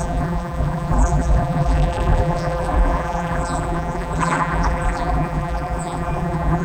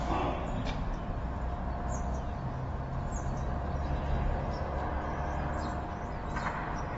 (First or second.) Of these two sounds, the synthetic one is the first